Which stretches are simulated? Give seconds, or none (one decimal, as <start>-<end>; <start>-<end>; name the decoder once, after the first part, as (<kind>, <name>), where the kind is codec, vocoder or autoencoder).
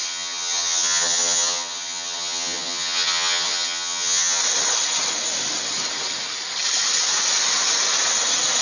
0.0-4.4 (vocoder, HiFi-GAN)